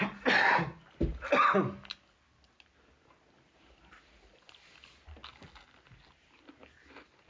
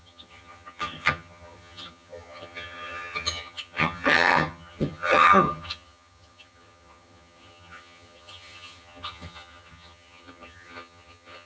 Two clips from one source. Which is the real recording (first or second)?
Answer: first